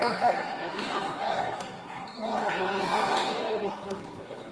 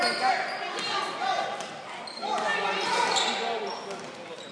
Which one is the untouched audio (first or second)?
second